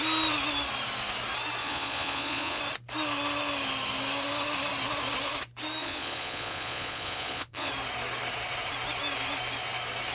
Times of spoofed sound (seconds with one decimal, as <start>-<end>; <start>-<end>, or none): 1.6-2.6; 5.8-7.7